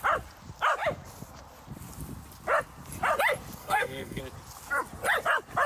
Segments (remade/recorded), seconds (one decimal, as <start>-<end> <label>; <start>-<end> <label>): 0.0-3.6 recorded; 3.6-4.2 remade; 4.2-5.7 recorded